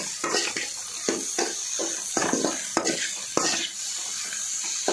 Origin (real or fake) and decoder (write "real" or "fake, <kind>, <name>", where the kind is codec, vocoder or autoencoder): real